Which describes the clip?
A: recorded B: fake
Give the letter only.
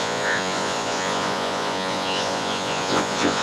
B